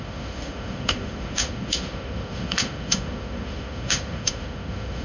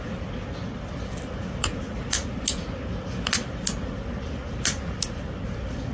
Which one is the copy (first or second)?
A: first